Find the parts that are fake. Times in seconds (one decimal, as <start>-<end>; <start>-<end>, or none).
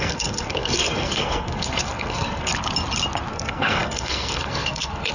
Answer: 0.0-2.5; 3.3-5.1